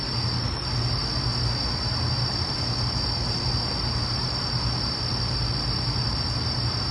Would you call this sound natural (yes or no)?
yes